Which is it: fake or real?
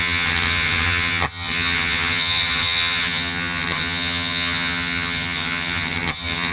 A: fake